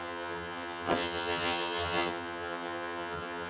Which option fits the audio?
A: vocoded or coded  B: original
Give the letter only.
A